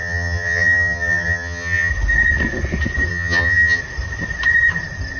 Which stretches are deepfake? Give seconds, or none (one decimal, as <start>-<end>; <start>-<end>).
0.0-1.9; 3.1-3.8